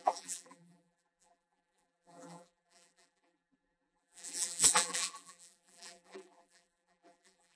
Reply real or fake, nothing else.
fake